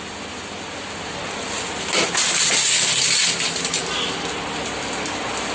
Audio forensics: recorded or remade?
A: recorded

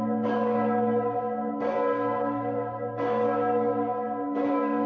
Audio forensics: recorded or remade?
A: remade